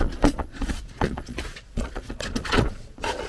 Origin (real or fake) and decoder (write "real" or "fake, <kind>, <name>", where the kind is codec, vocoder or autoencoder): fake, vocoder, Vocos